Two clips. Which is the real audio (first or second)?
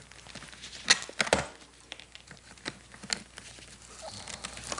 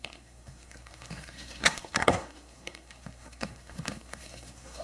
first